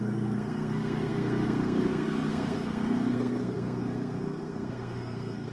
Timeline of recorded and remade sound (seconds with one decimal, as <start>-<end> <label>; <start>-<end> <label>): 0.0-5.5 remade